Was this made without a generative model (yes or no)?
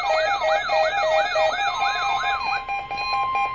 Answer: yes